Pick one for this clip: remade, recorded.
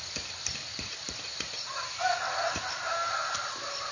recorded